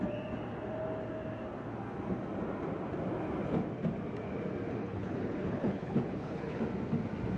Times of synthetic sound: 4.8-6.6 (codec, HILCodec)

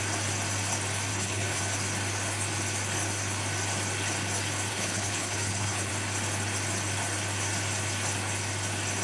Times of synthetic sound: 1.1-1.6 (codec, HILCodec); 4.7-5.9

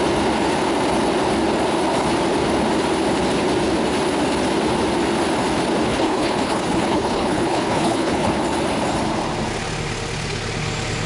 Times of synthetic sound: 5.9-8.3 (codec, HILCodec)

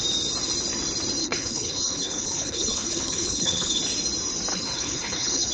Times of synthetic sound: 1.2-3.8 (codec, HILCodec); 4.5-5.5

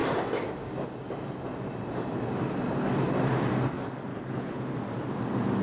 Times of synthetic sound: 4.1-4.6 (codec, HILCodec)

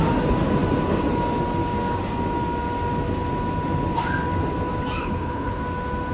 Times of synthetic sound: 5.0-5.6 (codec, HILCodec)

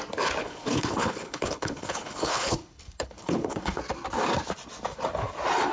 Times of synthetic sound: 0.4-3.8 (codec, HILCodec)

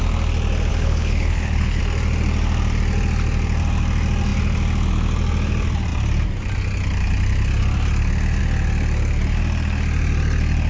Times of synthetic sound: 0.7-1.8 (codec, HILCodec)